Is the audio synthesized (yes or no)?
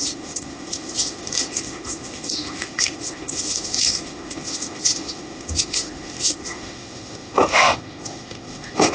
yes